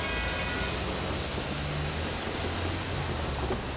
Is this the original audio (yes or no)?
yes